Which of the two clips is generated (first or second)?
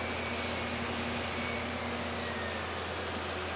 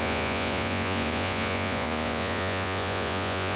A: second